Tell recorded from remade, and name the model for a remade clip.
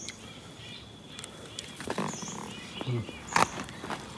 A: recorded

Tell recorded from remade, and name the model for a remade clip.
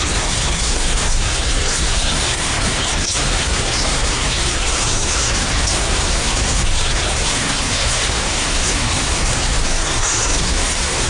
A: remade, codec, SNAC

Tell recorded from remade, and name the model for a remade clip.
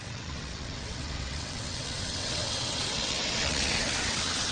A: remade, vocoder, WaveNeXt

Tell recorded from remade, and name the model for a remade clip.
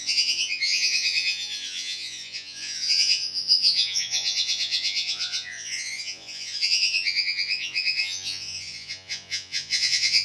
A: remade, vocoder, Vocos